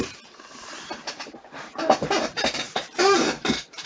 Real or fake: fake